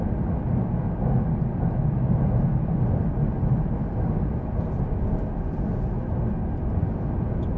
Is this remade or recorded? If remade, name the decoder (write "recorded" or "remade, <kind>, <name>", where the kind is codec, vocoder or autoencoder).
recorded